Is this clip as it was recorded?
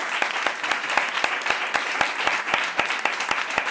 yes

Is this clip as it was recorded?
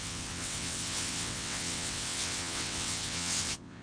no